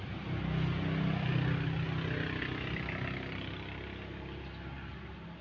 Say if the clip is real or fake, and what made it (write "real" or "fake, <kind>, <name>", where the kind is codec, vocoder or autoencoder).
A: real